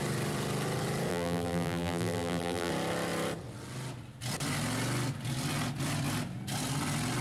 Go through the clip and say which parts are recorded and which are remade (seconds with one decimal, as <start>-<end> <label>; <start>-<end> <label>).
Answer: 0.0-1.1 recorded; 1.1-2.7 remade; 2.7-7.2 recorded